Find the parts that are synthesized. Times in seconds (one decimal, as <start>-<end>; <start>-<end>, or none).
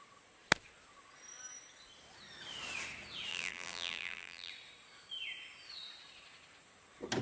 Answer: 3.3-4.5